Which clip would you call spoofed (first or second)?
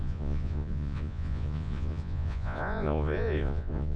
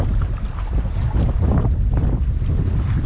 first